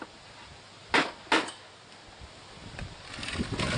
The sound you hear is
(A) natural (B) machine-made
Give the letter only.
A